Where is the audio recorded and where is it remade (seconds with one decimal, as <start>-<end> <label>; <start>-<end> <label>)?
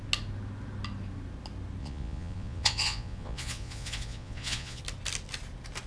0.0-1.8 recorded; 1.8-4.8 remade; 4.8-5.9 recorded